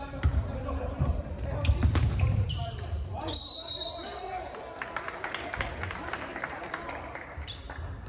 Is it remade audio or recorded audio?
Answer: remade